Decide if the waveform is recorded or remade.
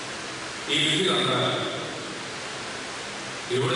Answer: recorded